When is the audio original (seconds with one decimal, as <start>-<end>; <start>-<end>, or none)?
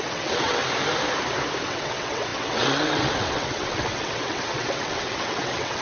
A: 0.6-1.6